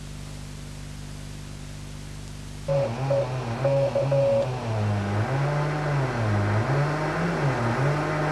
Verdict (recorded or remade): recorded